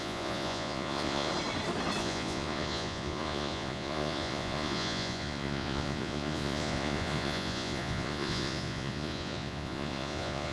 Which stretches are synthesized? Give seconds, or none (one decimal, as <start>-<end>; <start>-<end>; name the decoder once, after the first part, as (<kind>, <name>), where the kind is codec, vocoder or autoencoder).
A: 0.0-1.3 (vocoder, Vocos); 2.0-10.5